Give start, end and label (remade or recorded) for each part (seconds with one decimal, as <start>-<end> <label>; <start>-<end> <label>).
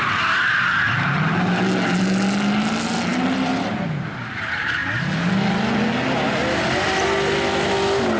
0.0-8.2 recorded